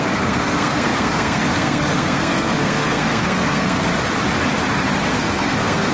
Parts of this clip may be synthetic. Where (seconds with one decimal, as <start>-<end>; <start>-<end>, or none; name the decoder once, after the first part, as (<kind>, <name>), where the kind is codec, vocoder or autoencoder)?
0.0-3.9 (codec, SNAC); 5.1-5.9